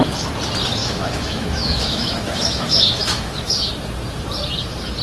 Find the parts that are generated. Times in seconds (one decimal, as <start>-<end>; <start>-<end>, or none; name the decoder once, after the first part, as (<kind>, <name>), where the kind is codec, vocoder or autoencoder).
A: 0.8-3.7 (autoencoder, DAC-VAE)